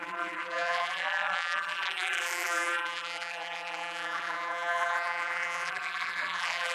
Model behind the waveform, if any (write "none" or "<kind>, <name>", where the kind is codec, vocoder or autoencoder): vocoder, BigVGAN v2